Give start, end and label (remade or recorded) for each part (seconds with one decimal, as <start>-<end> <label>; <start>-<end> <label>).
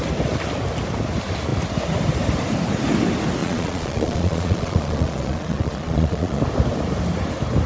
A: 0.0-3.4 recorded; 3.4-6.4 remade; 6.4-7.7 recorded